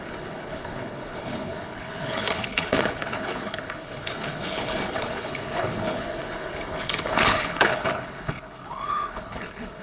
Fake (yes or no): yes